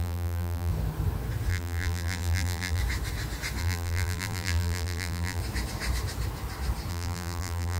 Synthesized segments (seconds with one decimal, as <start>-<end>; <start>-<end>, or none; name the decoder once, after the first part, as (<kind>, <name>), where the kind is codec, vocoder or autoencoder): 0.0-0.7 (vocoder, BigVGAN v2); 1.5-2.8; 3.6-5.4; 6.9-7.8